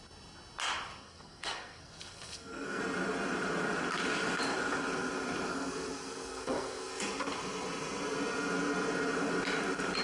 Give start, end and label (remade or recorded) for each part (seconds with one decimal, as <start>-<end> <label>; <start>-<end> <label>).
0.0-1.0 recorded; 1.0-2.8 remade; 2.8-5.5 recorded; 5.5-6.9 remade; 6.9-10.0 recorded